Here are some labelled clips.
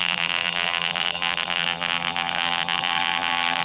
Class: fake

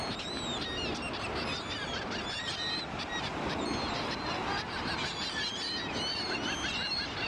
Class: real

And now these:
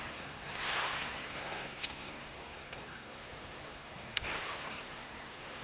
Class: fake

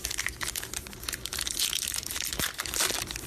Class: real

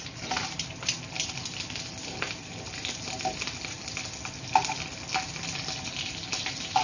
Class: real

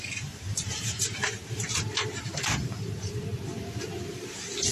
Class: fake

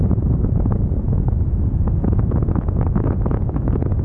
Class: fake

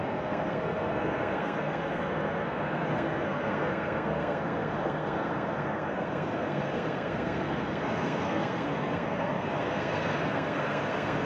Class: fake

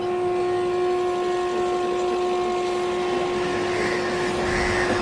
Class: real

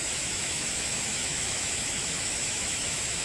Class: fake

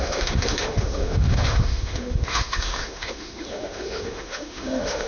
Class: fake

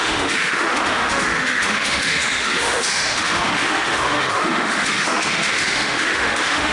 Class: fake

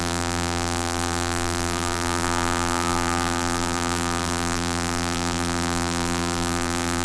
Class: fake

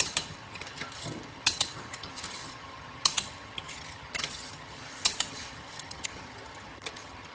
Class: fake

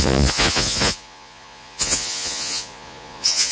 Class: fake